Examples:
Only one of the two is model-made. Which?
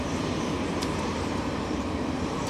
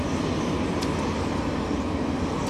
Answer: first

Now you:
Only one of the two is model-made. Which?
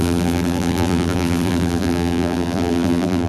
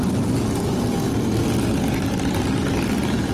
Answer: first